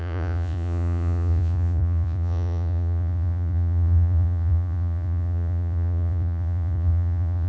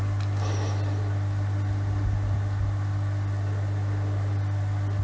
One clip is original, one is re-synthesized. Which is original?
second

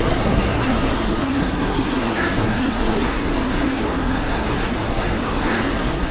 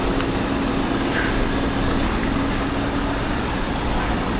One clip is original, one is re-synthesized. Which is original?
second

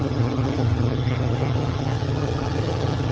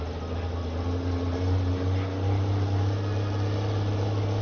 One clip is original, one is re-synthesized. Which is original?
second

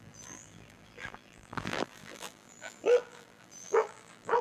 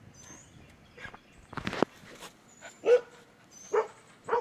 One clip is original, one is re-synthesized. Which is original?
second